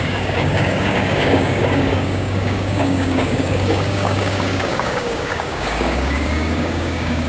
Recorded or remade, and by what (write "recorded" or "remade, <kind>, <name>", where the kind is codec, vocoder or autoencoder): remade, codec, DAC